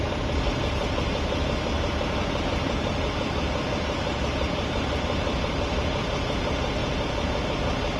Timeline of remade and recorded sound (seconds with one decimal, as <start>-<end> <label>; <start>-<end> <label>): 0.0-6.8 recorded; 6.8-7.4 remade; 7.4-8.0 recorded